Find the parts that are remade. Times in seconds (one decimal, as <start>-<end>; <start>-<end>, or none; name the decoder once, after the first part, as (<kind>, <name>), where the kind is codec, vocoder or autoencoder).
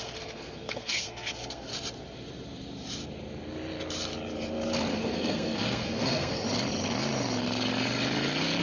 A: 0.0-1.7 (codec, SNAC); 4.9-6.3